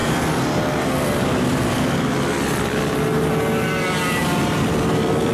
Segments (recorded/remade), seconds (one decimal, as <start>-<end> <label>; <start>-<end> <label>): 0.0-4.2 recorded; 4.2-5.3 remade